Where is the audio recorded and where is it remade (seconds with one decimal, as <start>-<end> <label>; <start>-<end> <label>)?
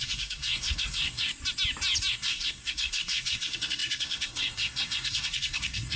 0.0-1.3 remade; 1.3-2.1 recorded; 2.1-6.0 remade